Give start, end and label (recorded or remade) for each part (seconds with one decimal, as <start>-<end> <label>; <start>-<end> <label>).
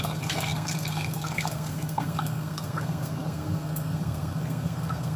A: 0.0-5.2 remade